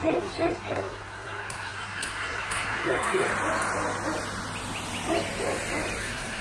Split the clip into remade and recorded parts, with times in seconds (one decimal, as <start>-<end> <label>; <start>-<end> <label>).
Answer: 0.0-3.3 remade; 3.3-6.0 recorded; 6.0-6.4 remade